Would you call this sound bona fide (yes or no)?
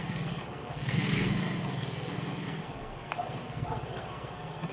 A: no